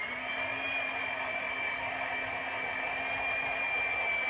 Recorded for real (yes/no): yes